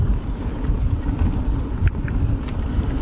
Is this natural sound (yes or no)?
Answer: yes